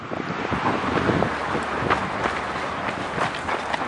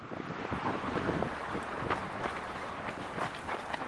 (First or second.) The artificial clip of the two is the second